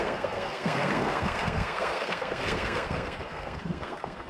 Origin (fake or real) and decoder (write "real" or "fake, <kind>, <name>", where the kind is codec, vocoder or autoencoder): fake, codec, SNAC